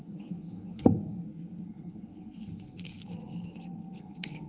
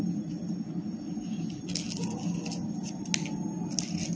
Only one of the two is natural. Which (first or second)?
second